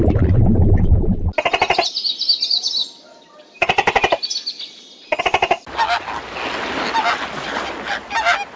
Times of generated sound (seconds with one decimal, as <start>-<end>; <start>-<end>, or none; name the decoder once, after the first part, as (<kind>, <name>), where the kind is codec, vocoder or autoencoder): none